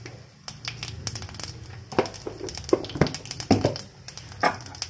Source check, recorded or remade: recorded